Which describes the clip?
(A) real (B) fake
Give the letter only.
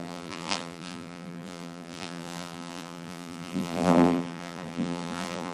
B